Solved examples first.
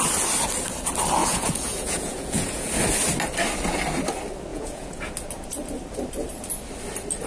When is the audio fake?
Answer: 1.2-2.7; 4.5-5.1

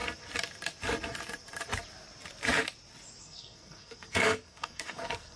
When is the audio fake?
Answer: 3.2-5.4